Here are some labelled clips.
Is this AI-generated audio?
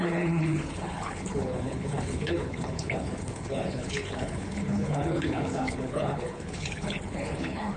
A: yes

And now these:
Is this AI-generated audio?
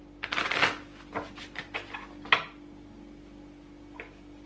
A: no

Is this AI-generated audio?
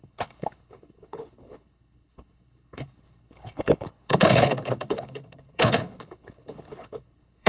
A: yes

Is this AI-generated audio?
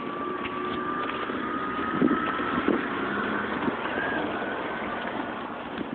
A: no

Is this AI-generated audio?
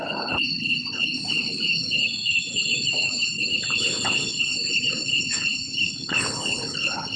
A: yes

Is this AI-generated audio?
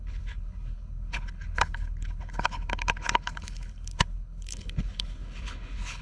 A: yes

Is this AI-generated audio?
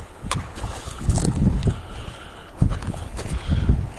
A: yes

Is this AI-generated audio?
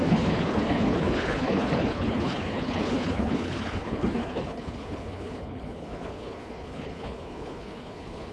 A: yes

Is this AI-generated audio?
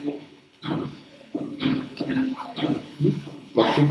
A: yes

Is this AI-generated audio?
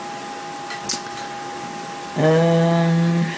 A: no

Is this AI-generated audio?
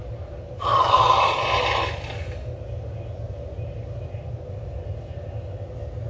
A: no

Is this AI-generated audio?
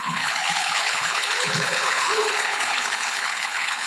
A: yes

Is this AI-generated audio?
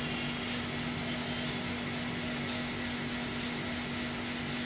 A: no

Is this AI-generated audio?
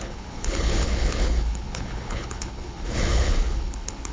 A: yes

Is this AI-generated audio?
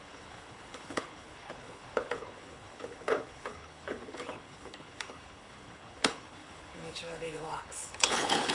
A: yes